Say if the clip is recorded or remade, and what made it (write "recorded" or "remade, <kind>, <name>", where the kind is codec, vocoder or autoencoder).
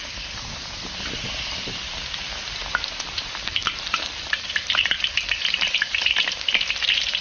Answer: remade, vocoder, BigVGAN v2